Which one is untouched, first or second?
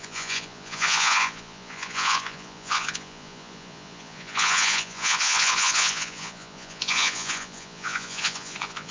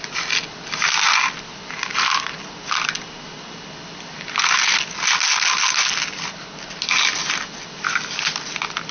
second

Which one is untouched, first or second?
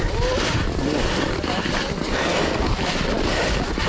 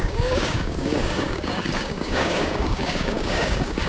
first